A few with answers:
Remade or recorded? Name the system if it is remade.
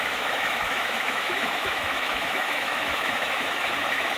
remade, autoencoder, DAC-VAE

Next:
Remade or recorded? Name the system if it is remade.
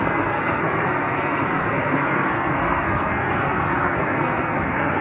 remade, codec, SNAC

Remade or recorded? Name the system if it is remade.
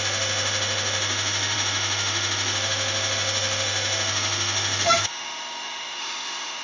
remade, autoencoder, DAC-VAE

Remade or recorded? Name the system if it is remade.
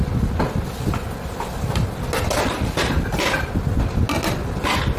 recorded